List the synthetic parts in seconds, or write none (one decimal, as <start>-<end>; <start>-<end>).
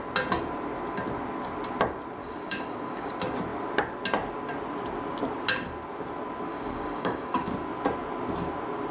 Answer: 2.2-3.1; 6.5-7.5